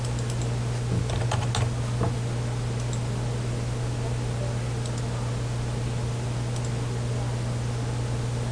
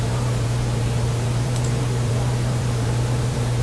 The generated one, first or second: second